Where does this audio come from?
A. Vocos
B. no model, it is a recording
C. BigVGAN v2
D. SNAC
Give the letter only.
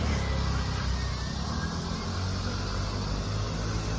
B